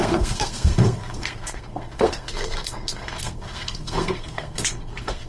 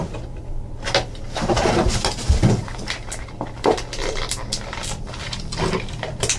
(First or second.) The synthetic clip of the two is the first